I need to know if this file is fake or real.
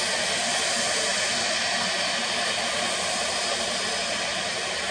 real